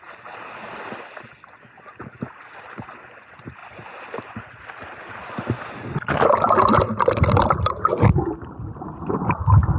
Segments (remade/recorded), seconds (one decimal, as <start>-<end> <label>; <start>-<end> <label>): 0.0-9.8 recorded